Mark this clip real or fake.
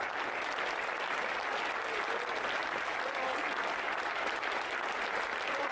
real